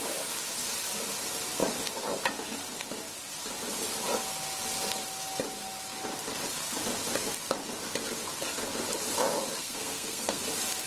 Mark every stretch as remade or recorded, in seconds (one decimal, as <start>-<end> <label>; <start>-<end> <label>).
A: 0.0-9.6 recorded; 9.6-10.4 remade; 10.4-10.9 recorded